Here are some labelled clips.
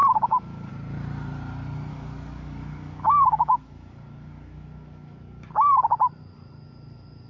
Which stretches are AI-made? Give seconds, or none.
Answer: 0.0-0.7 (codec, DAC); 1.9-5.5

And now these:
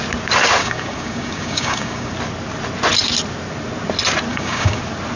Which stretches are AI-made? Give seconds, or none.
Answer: 0.6-2.1 (codec, DAC); 4.3-4.8